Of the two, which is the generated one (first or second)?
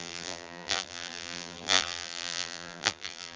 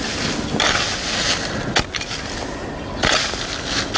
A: first